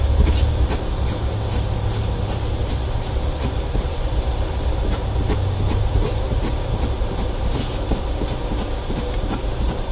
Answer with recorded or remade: remade